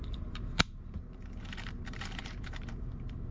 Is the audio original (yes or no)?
no